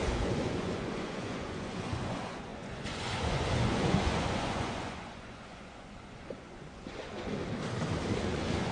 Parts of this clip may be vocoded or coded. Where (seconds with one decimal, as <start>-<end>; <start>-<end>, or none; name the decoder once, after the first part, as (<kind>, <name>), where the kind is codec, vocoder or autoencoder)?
0.0-7.4 (vocoder, Vocos); 8.2-8.7